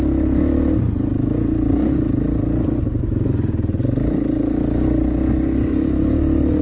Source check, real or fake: real